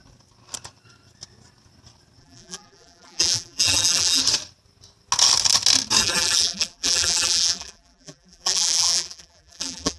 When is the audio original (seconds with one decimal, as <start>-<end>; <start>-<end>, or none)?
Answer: 0.0-2.2; 4.2-6.0